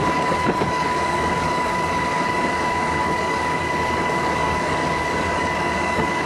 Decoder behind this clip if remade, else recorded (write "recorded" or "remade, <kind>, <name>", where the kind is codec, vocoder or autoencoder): remade, codec, DAC